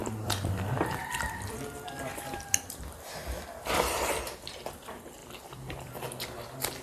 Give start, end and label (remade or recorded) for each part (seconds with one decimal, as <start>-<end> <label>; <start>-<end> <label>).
0.0-4.1 remade; 4.1-5.2 recorded; 5.2-5.9 remade; 5.9-6.8 recorded